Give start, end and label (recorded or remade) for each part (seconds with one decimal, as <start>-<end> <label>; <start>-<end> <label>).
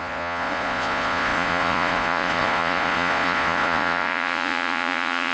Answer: 0.0-5.3 remade